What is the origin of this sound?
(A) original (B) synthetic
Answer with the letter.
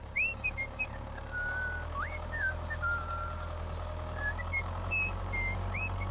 B